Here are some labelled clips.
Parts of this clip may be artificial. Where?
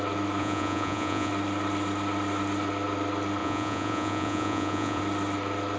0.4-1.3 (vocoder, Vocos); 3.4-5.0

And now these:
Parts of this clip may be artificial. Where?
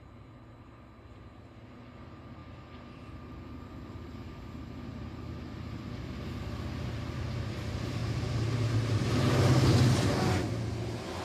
none